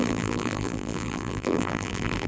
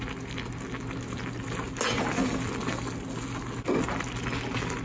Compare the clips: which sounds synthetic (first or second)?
first